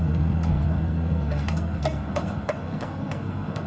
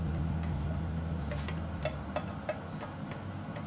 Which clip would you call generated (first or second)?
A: first